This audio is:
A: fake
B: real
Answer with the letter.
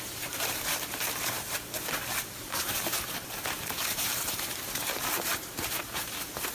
A